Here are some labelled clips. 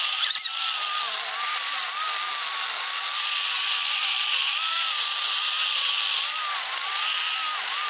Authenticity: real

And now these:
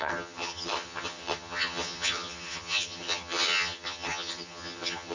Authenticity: fake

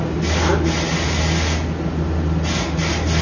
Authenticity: real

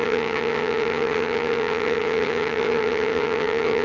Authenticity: fake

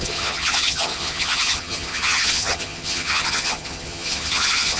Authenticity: fake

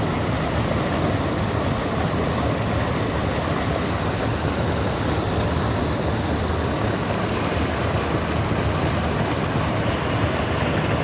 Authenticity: real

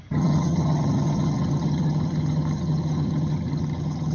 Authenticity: fake